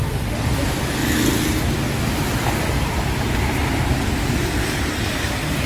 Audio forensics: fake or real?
real